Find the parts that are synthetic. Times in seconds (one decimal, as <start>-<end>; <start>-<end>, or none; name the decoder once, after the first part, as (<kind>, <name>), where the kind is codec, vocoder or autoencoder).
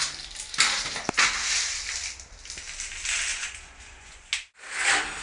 3.3-4.3 (vocoder, Vocos)